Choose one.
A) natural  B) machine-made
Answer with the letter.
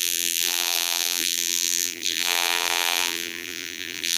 B